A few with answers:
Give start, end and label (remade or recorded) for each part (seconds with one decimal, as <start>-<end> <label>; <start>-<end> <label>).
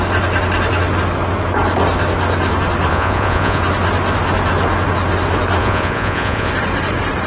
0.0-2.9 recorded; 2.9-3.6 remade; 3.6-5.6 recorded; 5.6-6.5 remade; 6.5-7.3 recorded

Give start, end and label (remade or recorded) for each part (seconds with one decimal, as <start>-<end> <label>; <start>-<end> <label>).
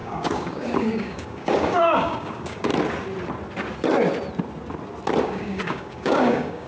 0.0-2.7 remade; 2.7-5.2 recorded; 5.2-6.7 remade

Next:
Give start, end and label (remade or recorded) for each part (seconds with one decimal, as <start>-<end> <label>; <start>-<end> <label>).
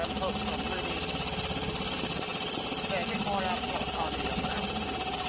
0.0-5.3 recorded